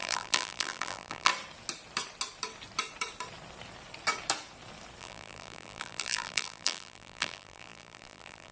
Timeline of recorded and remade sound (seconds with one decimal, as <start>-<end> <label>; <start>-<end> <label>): 0.0-1.3 remade; 1.3-5.0 recorded; 5.0-8.5 remade